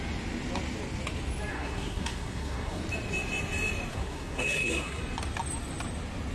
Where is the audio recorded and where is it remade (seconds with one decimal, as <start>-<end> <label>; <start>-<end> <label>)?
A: 0.0-1.5 recorded; 1.5-2.8 remade; 2.8-3.9 recorded; 3.9-5.0 remade; 5.0-6.3 recorded